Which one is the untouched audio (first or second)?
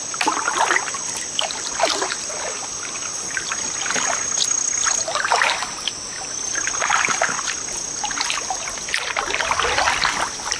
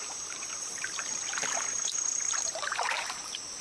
first